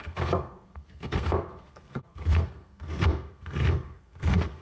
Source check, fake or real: fake